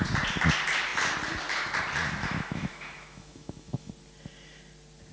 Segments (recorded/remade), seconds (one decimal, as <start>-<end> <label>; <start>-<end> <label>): 0.0-2.2 recorded; 2.2-3.9 remade; 3.9-5.1 recorded